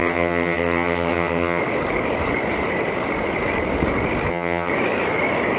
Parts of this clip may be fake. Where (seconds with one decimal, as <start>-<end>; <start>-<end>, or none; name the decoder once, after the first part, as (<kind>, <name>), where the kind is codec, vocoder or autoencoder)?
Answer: 0.0-1.6 (vocoder, HiFi-GAN); 4.3-4.7